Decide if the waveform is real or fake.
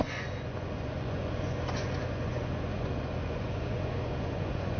fake